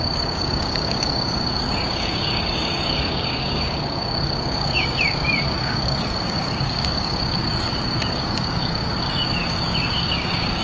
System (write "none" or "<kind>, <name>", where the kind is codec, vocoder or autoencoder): codec, DAC